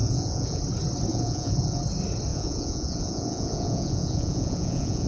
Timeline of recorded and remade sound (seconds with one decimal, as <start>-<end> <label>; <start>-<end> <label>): 0.0-0.6 remade; 0.6-1.1 recorded; 1.1-1.8 remade; 1.8-2.3 recorded; 2.3-5.1 remade